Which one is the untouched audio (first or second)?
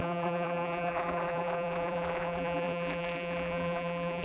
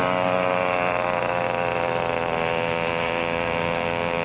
second